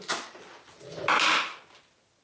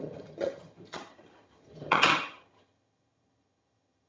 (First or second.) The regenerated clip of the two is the second